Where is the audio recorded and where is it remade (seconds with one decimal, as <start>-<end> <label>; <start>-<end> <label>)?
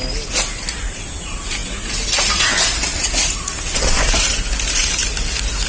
0.0-5.7 recorded